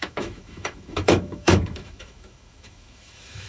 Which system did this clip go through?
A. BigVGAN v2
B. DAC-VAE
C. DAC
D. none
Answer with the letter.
B